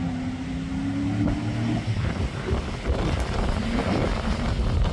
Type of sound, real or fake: real